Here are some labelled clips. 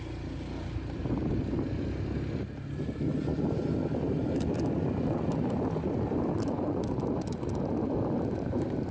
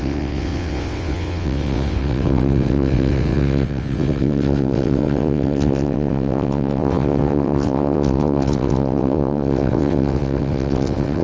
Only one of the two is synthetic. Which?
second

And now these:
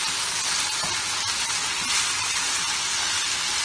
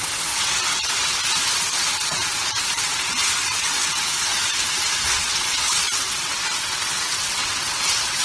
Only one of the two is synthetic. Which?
second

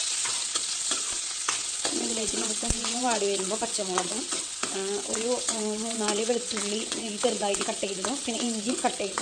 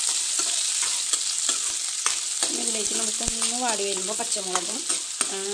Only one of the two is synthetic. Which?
first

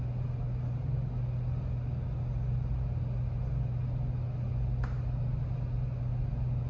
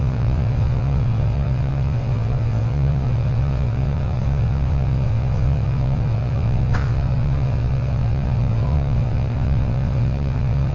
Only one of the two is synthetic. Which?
second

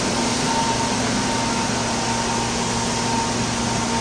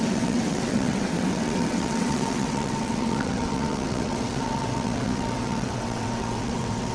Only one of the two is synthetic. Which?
second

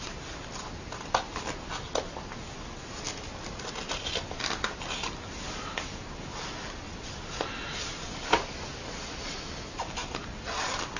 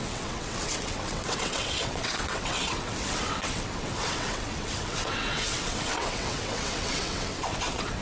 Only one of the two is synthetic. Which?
second